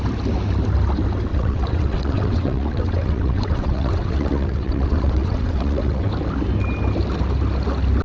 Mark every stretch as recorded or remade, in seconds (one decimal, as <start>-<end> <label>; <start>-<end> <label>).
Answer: 0.0-1.3 recorded; 1.3-6.1 remade; 6.1-8.0 recorded